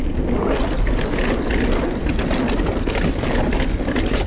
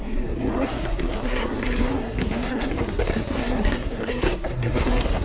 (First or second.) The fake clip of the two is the second